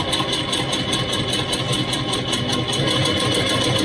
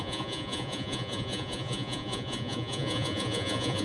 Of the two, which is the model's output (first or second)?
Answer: second